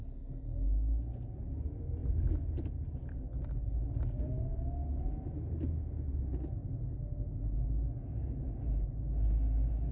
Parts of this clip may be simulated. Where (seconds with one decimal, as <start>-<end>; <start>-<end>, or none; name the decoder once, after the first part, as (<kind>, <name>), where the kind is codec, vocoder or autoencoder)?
none